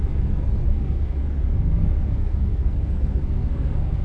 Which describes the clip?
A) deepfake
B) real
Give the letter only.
A